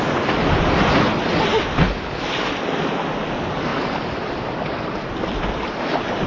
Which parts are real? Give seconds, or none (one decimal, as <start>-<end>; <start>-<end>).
0.0-6.3